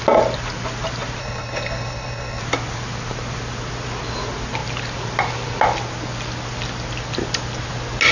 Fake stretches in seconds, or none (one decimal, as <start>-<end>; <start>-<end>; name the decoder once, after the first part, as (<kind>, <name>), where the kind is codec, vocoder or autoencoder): 1.2-2.4 (codec, HILCodec)